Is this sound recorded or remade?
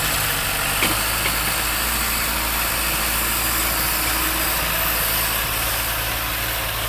recorded